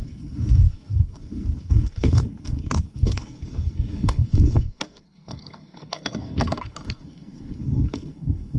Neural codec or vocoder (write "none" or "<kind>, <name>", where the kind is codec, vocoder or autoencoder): codec, SNAC